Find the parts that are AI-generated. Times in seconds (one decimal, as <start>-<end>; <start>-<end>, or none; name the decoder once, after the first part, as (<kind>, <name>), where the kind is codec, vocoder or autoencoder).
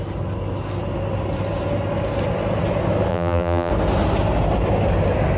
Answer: 3.1-3.7 (vocoder, BigVGAN v2)